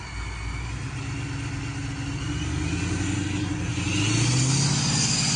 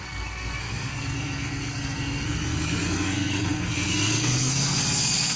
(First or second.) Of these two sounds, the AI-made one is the second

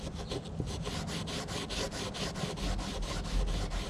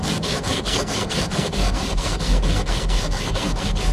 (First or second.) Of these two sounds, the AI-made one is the second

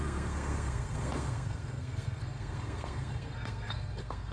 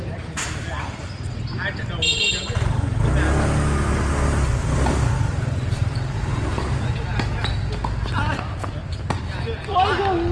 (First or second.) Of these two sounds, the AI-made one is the first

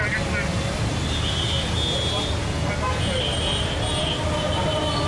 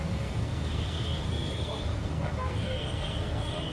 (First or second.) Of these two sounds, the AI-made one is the second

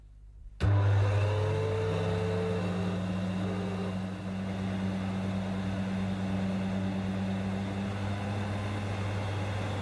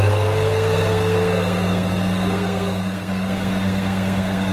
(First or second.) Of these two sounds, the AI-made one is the second